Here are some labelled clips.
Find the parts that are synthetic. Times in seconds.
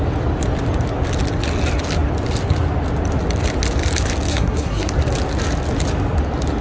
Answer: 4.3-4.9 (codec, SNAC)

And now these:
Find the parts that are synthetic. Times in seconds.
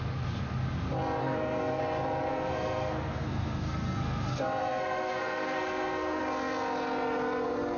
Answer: 1.2-1.8 (codec, SNAC); 2.3-6.2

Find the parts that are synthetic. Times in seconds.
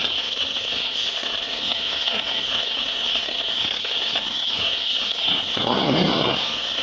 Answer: 0.0-6.8 (codec, SNAC)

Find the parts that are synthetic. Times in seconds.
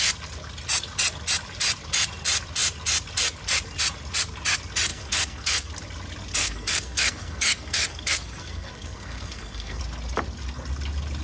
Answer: 4.9-5.7 (codec, SNAC); 6.4-9.8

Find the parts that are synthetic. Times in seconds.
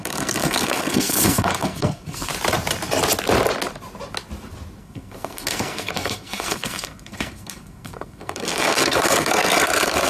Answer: 0.0-2.3 (codec, SNAC); 4.8-10.1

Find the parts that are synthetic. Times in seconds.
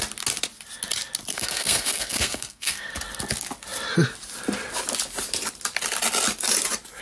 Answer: 1.3-2.9 (codec, SNAC)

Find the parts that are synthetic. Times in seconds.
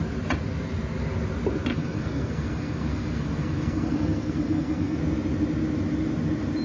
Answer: 1.7-5.0 (codec, SNAC)